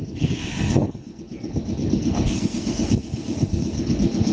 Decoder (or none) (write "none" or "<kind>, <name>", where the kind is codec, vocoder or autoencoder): codec, SNAC